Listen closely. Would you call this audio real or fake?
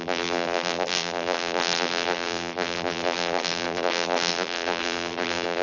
fake